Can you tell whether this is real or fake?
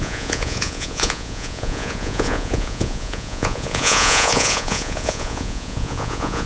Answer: fake